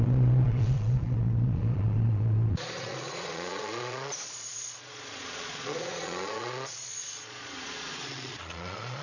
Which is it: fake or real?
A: fake